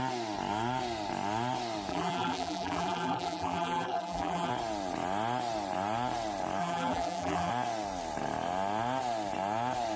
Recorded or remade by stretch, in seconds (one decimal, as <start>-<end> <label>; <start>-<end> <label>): 0.0-1.9 recorded; 1.9-4.5 remade; 4.5-6.6 recorded; 6.6-7.5 remade; 7.5-10.0 recorded